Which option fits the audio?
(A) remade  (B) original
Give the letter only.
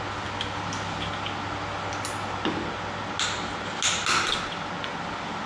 B